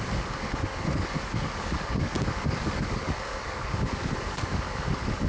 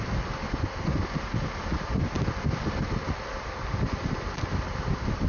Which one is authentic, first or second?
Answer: second